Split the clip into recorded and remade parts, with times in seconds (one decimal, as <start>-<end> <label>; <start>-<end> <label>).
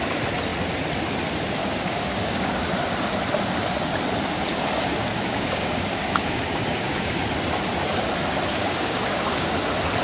0.0-1.6 recorded; 1.6-2.6 remade; 2.6-5.1 recorded; 5.1-7.2 remade; 7.2-8.6 recorded; 8.6-9.5 remade; 9.5-10.0 recorded